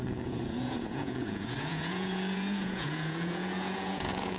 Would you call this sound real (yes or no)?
no